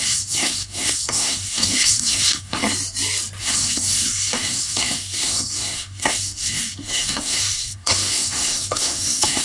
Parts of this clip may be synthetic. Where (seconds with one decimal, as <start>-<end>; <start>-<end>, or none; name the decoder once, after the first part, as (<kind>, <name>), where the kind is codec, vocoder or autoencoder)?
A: 0.0-2.6 (codec, SNAC); 3.4-9.4